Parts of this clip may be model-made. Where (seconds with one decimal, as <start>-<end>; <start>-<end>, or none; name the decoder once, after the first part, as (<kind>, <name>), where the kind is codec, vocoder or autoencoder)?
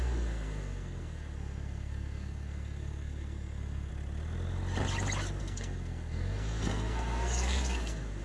0.0-3.9 (codec, SNAC); 5.4-8.2